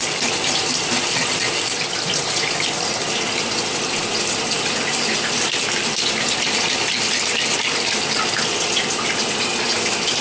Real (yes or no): yes